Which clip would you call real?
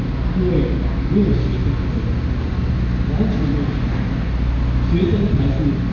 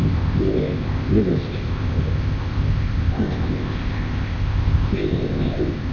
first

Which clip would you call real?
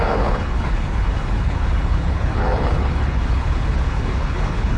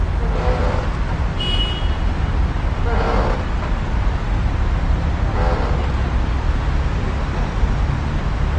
second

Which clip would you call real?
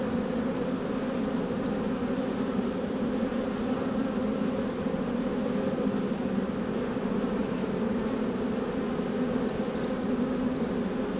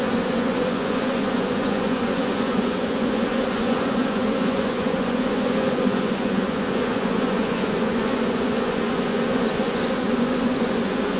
first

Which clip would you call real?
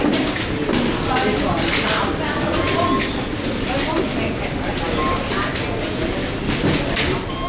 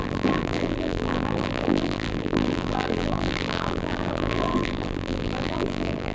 first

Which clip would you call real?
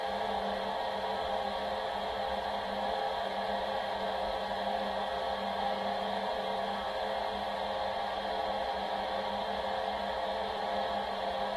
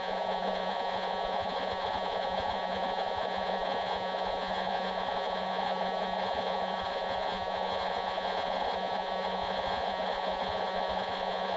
first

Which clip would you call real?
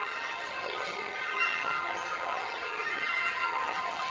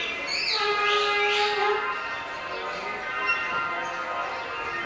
second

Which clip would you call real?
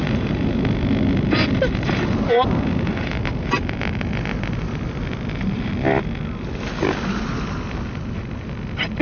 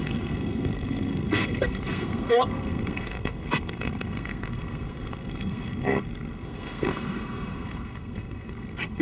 first